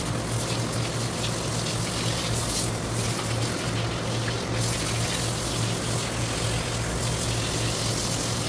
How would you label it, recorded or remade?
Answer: recorded